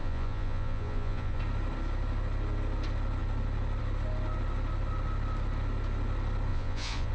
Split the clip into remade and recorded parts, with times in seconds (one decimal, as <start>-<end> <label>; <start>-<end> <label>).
0.0-1.4 remade; 1.4-6.5 recorded; 6.5-7.1 remade